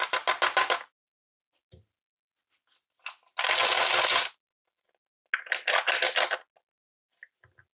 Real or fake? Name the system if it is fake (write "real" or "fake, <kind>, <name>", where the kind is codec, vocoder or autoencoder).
real